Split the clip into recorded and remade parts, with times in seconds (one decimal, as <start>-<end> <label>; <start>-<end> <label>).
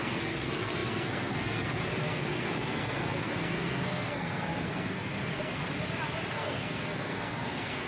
0.0-5.6 remade; 5.6-6.3 recorded; 6.3-7.9 remade